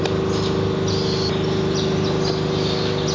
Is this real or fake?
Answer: real